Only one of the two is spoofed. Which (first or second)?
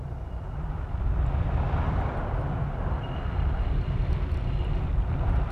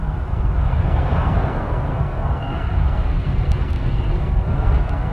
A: second